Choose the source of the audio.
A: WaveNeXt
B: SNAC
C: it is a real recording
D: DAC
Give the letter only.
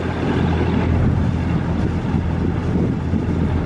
C